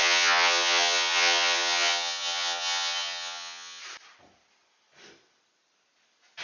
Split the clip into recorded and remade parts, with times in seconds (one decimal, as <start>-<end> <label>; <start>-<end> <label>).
0.0-3.8 remade; 3.8-6.4 recorded